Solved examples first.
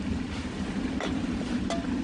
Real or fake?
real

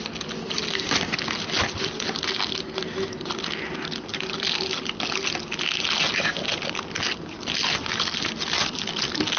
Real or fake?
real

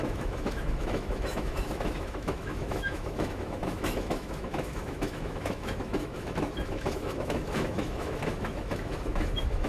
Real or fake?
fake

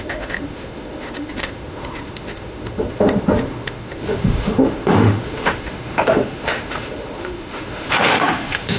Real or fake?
fake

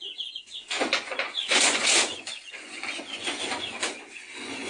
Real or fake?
fake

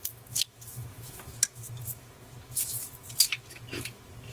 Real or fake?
fake